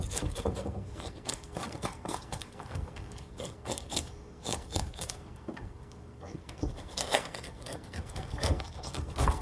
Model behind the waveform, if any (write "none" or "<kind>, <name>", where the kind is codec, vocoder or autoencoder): codec, SNAC